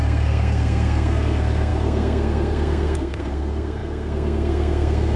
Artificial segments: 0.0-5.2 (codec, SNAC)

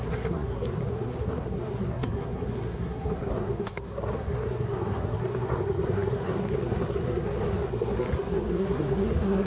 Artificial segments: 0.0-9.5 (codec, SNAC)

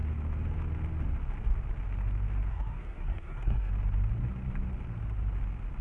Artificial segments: 2.5-3.7 (codec, SNAC)